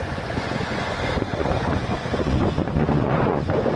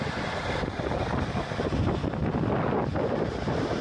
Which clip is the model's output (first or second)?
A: first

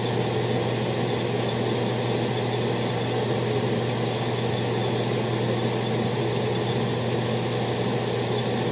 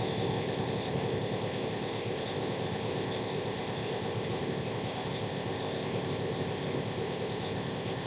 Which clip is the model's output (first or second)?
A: second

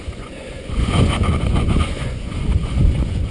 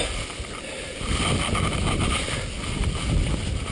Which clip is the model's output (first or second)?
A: first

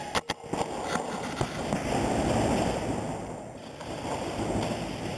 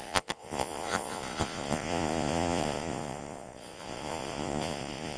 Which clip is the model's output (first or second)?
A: second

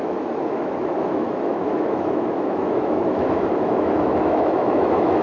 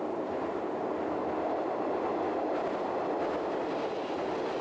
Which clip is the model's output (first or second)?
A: first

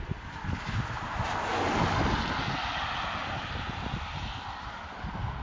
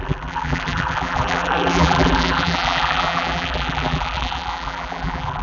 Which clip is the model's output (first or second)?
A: second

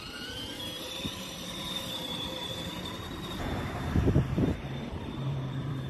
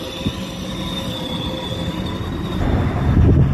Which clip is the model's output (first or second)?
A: first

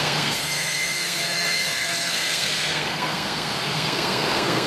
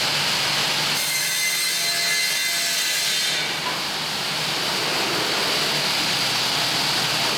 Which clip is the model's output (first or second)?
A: first